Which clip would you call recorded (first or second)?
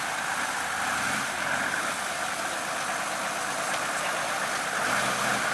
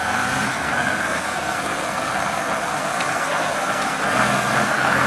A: first